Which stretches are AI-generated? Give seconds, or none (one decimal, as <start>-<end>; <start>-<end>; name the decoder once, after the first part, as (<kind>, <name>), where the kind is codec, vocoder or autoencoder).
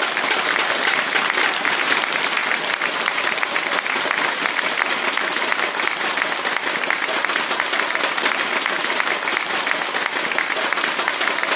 none